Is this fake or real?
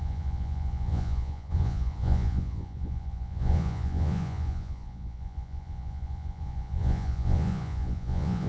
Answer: fake